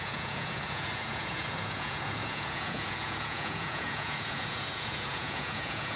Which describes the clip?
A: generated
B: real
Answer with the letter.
A